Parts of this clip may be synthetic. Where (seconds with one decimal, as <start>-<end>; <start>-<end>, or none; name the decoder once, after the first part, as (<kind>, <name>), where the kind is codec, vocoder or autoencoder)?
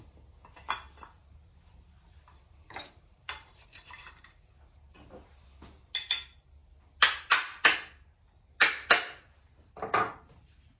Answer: 1.2-5.3 (vocoder, BigVGAN v2)